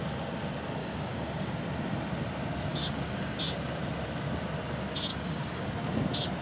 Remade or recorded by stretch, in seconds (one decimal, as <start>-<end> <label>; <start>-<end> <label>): 0.0-0.8 recorded; 0.8-1.6 remade; 1.6-2.7 recorded; 2.7-3.4 remade; 3.4-5.1 recorded; 5.1-5.7 remade; 5.7-6.4 recorded